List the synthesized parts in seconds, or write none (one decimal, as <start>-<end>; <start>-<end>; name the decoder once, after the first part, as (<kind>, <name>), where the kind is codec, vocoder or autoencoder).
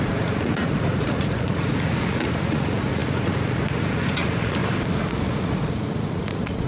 0.0-4.6 (vocoder, Vocos); 5.1-6.7